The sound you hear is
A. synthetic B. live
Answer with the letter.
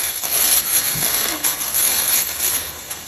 A